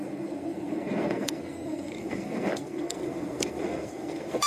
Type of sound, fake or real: fake